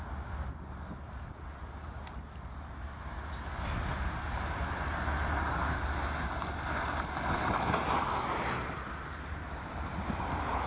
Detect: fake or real real